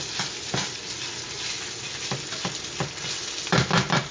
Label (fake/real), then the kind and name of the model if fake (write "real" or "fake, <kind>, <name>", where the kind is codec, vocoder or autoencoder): real